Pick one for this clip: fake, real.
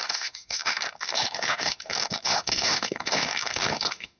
fake